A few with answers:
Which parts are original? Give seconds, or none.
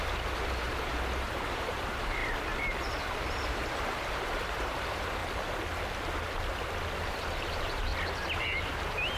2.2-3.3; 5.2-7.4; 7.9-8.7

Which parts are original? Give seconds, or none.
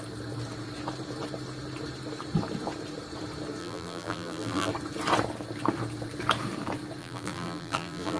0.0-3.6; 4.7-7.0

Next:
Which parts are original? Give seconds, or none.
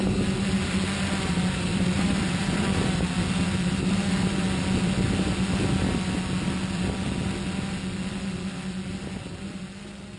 0.0-1.7; 2.7-10.2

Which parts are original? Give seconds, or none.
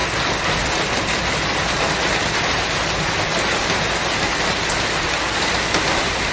0.0-6.3